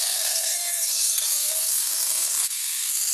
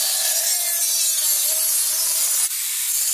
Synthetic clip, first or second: first